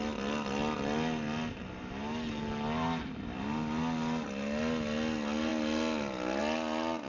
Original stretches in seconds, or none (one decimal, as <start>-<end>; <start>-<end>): 0.0-7.1